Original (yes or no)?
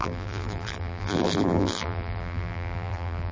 no